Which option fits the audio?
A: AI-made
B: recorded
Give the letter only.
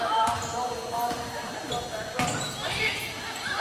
B